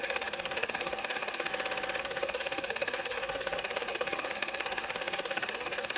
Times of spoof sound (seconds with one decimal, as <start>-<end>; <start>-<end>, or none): 0.0-1.5; 2.0-6.0